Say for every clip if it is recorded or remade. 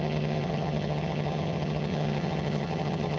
remade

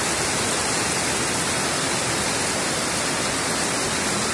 recorded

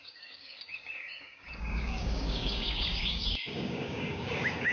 remade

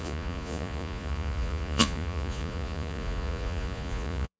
remade